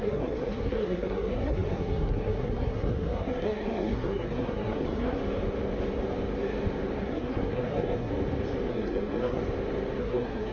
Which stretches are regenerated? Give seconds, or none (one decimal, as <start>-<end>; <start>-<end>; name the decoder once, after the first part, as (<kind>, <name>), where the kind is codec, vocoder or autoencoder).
0.0-5.2 (codec, SNAC); 7.0-8.1; 8.7-9.4; 10.0-10.5